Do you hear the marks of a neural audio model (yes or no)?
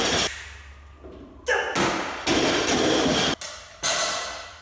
no